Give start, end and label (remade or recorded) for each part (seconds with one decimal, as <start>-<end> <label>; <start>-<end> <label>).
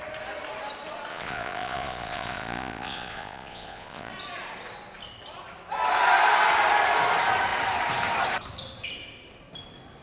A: 0.0-1.1 recorded; 1.1-4.1 remade; 4.1-10.0 recorded